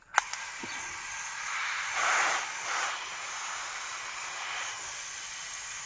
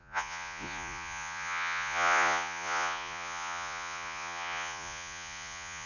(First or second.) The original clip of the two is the first